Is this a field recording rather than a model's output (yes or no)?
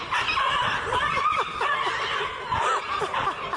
yes